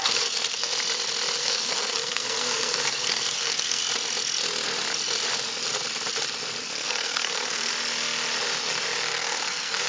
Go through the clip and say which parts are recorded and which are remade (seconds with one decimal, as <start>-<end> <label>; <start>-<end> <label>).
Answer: 0.0-0.7 remade; 0.7-1.4 recorded; 1.4-3.8 remade; 3.8-6.6 recorded; 6.6-7.7 remade; 7.7-9.1 recorded; 9.1-9.9 remade